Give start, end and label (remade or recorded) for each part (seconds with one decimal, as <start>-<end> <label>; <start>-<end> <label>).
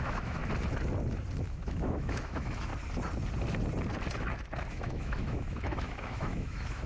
0.0-0.4 remade; 0.4-1.4 recorded; 1.4-2.7 remade; 2.7-4.7 recorded; 4.7-6.9 remade